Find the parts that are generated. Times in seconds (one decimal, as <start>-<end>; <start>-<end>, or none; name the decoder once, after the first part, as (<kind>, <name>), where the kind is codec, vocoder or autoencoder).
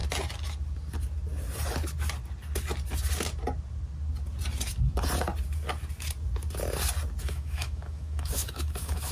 7.2-9.1 (autoencoder, DAC-VAE)